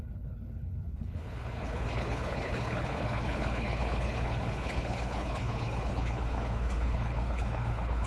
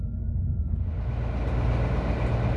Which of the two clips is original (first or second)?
second